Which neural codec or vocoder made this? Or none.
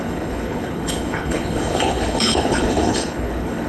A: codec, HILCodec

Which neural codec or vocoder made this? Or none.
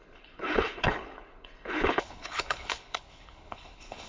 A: codec, HILCodec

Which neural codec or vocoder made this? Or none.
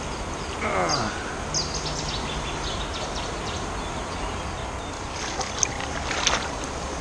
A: none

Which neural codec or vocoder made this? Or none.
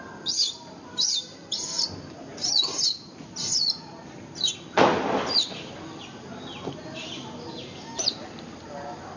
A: none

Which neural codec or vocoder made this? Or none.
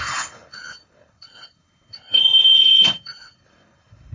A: codec, HILCodec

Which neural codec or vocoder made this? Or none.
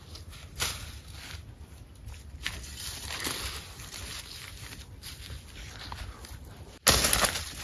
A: none